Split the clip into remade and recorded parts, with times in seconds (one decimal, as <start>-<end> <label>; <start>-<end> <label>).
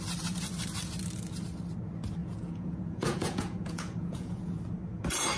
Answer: 0.0-2.2 recorded; 2.2-4.6 remade; 4.6-5.4 recorded